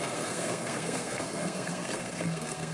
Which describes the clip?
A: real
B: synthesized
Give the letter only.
B